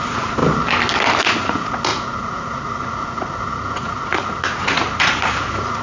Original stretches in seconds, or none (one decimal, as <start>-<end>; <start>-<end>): 0.4-1.2